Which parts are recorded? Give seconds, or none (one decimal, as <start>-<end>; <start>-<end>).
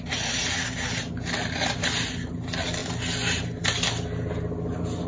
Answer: 0.0-5.1